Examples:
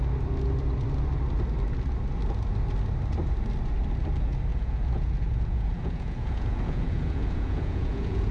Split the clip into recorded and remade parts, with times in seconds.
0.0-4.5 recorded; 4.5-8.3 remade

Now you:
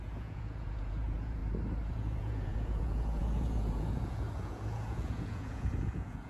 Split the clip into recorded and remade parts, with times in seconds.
0.0-1.4 remade; 1.4-1.9 recorded; 1.9-6.3 remade

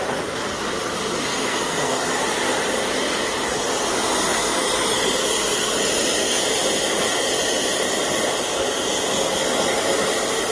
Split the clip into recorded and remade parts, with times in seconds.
0.0-1.3 recorded; 1.3-2.2 remade; 2.2-10.5 recorded